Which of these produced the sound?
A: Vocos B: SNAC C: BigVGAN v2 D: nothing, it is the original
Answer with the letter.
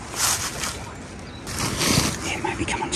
D